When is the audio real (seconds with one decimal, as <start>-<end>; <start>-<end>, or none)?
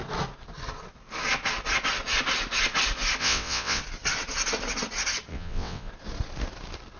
0.0-3.2; 3.8-5.3; 5.9-7.0